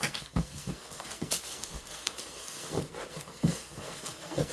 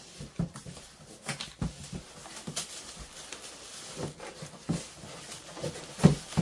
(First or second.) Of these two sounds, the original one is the second